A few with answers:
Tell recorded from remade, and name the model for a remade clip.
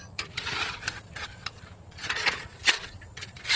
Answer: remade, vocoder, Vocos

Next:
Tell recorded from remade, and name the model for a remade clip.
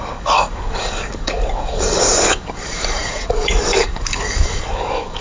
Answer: remade, codec, DAC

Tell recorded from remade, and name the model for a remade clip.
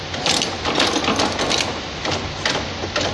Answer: recorded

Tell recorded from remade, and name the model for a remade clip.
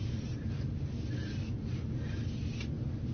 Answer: recorded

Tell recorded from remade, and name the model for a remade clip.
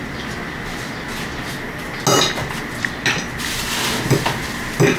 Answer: recorded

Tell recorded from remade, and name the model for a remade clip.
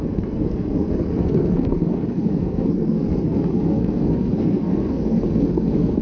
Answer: remade, codec, SNAC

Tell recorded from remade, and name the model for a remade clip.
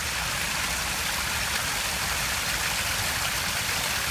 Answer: recorded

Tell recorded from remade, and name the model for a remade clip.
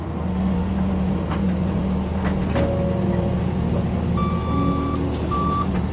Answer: recorded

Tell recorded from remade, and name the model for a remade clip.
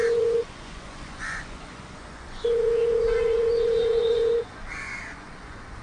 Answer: remade, vocoder, Vocos